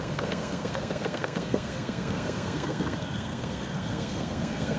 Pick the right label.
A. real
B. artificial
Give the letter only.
B